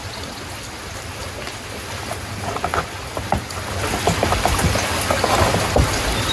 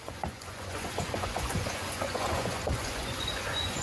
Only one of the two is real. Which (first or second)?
first